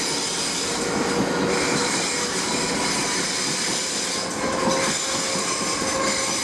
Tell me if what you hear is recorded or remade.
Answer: recorded